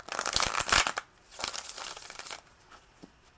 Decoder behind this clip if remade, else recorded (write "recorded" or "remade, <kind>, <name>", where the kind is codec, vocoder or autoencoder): recorded